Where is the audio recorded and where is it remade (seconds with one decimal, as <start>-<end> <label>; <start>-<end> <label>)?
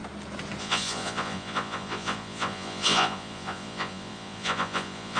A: 0.0-0.6 recorded; 0.6-5.2 remade